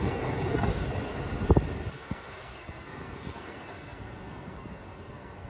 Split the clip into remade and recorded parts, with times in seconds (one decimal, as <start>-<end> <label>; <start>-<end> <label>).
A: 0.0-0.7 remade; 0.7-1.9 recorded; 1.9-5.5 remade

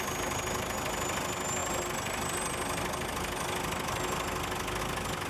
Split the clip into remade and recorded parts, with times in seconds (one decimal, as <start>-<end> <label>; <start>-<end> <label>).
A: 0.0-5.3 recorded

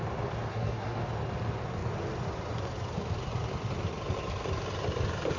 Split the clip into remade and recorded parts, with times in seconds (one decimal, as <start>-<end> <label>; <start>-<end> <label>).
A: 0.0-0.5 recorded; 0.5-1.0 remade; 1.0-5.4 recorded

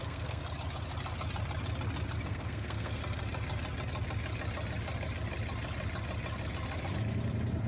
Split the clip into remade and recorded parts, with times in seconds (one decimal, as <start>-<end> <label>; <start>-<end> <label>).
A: 0.0-0.4 remade; 0.4-2.3 recorded; 2.3-3.0 remade; 3.0-7.7 recorded